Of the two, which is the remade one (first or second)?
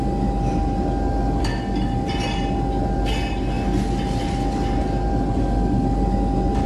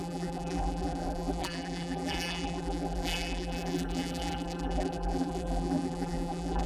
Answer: second